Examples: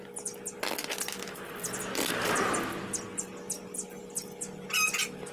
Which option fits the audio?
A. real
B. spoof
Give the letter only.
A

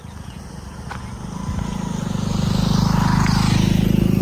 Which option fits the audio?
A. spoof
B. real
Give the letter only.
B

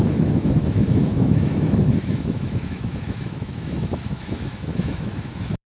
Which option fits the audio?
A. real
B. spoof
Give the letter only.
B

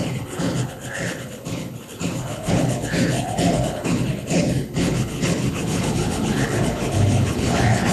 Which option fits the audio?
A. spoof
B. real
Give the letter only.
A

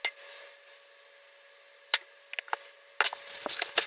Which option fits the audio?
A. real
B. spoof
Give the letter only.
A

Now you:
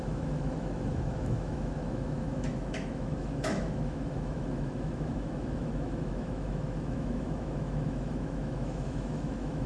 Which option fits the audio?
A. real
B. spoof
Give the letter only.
B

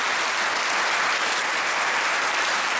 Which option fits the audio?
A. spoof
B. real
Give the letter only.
B